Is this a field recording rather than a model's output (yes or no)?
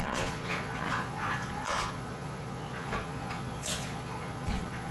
no